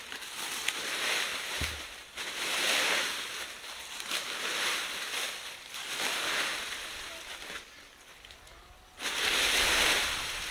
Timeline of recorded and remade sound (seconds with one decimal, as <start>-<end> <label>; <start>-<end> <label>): 0.0-1.3 recorded; 1.3-2.6 remade; 2.6-10.5 recorded